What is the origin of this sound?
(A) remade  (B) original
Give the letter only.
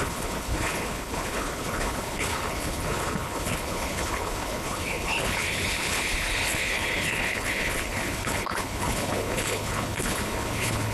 A